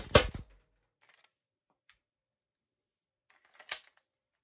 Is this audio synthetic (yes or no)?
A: no